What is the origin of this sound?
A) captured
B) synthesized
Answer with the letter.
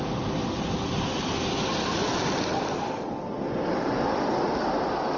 A